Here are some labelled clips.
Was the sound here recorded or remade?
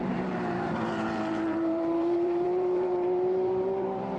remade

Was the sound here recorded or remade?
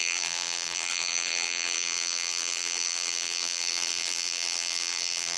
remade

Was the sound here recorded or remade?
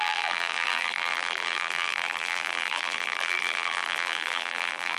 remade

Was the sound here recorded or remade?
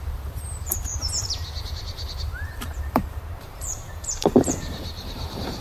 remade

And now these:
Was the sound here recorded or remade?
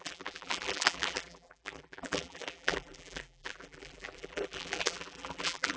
remade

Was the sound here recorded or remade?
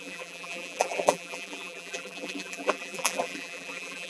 remade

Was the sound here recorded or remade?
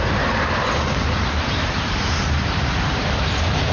remade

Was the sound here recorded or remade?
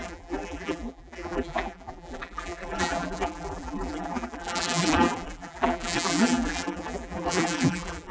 remade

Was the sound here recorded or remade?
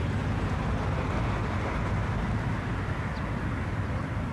recorded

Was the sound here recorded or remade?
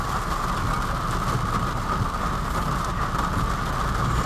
recorded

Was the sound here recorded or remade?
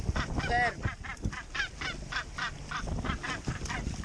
recorded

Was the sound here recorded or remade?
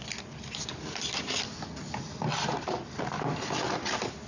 recorded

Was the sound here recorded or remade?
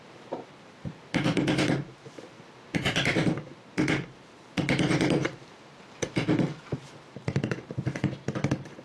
remade